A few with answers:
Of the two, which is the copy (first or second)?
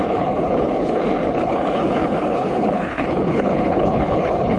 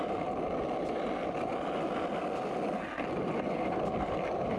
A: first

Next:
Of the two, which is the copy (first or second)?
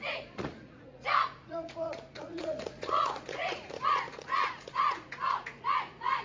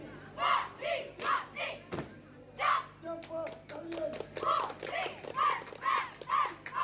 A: first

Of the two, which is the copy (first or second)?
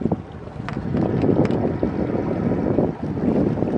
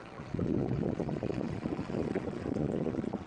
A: second